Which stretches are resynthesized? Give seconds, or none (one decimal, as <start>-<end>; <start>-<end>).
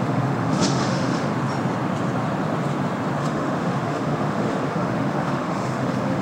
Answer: 0.0-1.3; 3.2-6.2